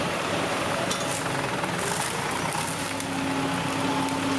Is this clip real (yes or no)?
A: yes